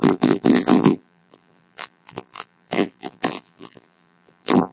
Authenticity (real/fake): fake